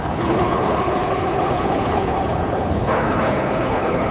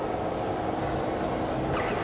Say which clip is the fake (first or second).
first